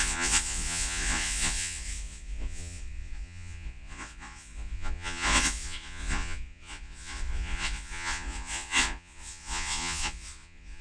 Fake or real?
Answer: fake